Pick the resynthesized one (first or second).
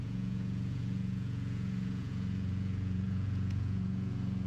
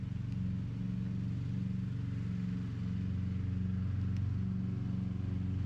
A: first